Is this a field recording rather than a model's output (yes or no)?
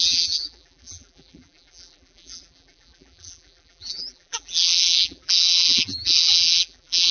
no